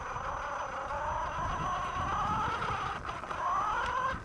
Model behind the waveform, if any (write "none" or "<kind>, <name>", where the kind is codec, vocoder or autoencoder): none